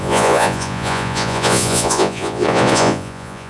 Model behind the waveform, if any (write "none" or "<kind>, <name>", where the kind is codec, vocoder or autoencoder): vocoder, Vocos